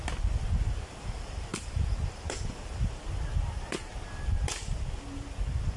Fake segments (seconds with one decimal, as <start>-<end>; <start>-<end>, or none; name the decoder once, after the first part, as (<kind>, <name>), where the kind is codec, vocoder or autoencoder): 1.5-3.0 (vocoder, BigVGAN v2)